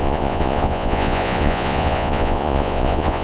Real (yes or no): no